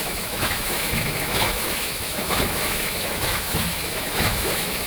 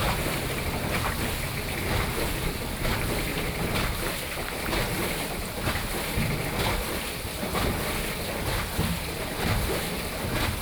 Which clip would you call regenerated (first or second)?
first